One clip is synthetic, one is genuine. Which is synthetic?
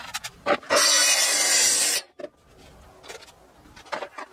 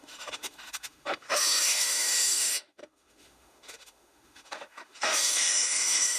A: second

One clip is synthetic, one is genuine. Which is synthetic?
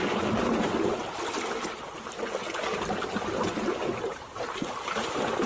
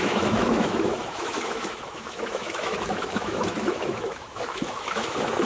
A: second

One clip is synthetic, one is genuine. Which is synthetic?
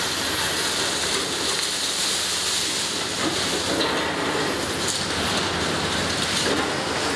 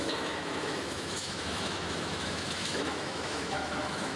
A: second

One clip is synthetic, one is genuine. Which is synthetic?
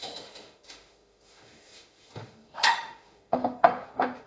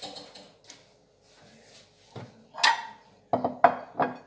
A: first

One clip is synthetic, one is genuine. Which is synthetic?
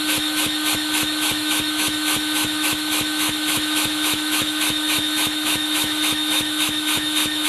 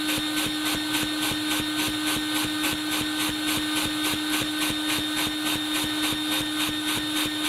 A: first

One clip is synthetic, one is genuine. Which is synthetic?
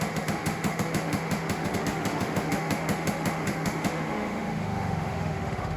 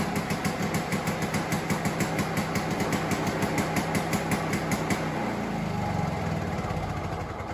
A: first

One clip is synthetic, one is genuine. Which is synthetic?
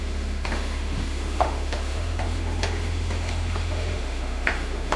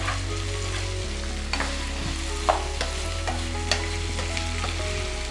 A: first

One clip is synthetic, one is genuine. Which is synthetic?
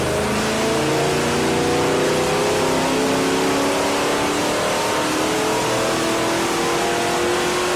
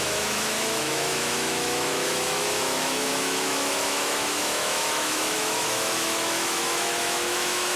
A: second